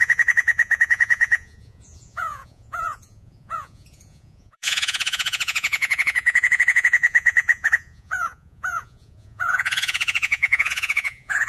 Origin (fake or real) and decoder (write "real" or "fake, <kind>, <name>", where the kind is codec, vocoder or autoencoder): fake, vocoder, Vocos